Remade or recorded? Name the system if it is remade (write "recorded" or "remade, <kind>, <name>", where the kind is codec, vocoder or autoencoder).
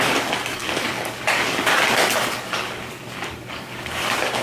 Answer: remade, codec, DAC